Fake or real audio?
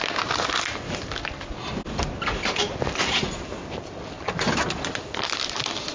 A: real